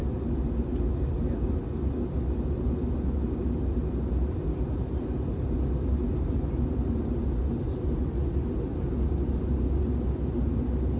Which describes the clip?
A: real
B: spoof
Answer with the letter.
A